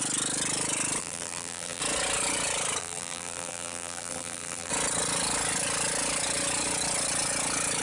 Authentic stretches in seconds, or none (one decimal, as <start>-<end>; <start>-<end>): 0.0-1.0; 1.8-2.8; 4.7-7.8